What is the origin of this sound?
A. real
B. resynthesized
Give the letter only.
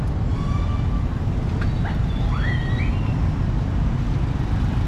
A